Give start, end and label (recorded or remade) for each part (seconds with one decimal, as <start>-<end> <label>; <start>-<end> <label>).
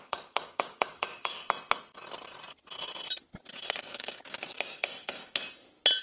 0.0-1.4 remade; 1.4-3.8 recorded; 3.8-5.2 remade; 5.2-6.0 recorded